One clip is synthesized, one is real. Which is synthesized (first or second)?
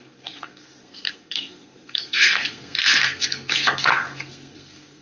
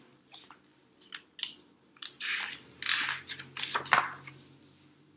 first